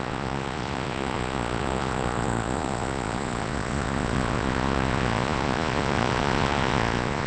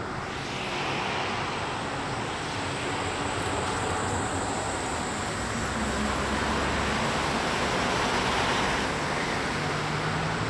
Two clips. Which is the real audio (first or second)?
second